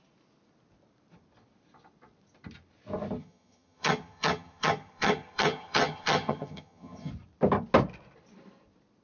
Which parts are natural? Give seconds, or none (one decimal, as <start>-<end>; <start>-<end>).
0.0-3.2; 7.1-9.0